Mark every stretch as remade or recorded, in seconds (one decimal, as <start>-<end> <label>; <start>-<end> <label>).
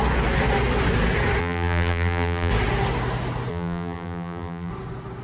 0.0-1.4 recorded; 1.4-2.5 remade; 2.5-3.5 recorded; 3.5-4.7 remade; 4.7-5.2 recorded